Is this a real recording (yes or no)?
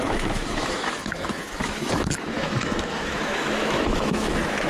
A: no